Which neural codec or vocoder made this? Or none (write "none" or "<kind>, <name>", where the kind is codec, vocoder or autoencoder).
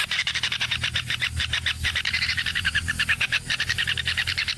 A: vocoder, BigVGAN v2